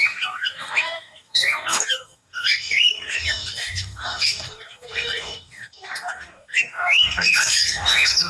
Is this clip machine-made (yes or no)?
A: yes